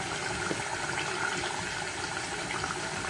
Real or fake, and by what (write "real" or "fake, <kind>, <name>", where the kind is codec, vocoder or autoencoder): real